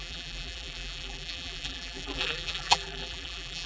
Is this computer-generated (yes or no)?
yes